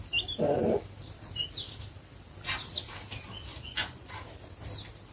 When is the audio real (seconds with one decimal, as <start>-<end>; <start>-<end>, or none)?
0.0-3.5; 4.1-5.1